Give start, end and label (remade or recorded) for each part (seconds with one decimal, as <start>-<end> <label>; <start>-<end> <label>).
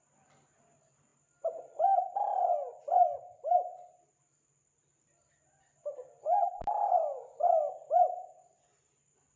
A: 0.0-9.4 remade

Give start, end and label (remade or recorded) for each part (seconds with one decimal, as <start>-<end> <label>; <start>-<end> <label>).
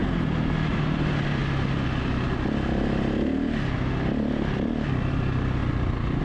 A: 0.0-0.7 recorded; 0.7-1.4 remade; 1.4-5.1 recorded; 5.1-5.6 remade; 5.6-6.2 recorded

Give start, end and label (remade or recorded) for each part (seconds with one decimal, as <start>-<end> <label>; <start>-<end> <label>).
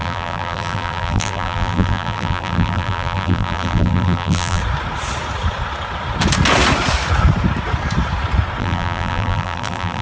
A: 0.0-4.6 remade; 4.6-8.6 recorded; 8.6-10.0 remade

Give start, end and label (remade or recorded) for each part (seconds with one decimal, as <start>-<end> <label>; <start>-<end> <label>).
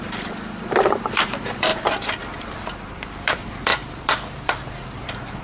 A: 0.0-5.4 remade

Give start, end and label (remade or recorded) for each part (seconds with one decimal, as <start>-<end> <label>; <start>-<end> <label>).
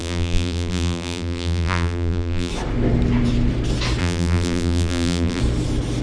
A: 0.0-2.5 remade; 2.5-4.0 recorded; 4.0-5.4 remade; 5.4-6.0 recorded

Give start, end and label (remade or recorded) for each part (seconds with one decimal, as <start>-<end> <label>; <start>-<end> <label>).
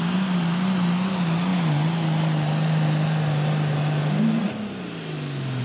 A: 0.0-5.6 recorded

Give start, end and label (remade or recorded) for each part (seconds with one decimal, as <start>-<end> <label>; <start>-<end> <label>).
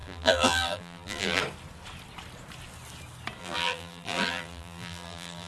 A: 0.0-1.4 remade; 1.4-3.4 recorded; 3.4-5.5 remade